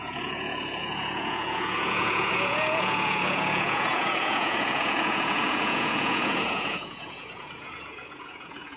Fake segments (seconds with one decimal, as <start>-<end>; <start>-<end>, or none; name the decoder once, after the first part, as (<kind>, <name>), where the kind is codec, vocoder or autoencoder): 0.0-8.8 (vocoder, Vocos)